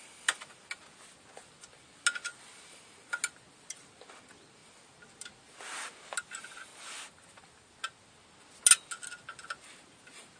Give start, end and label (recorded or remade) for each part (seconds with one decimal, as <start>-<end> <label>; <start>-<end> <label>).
0.0-6.7 recorded; 6.7-7.7 remade; 7.7-10.4 recorded